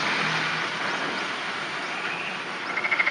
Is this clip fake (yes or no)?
no